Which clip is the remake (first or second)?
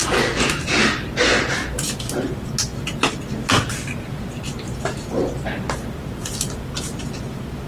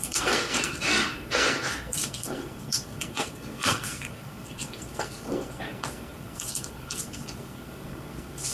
second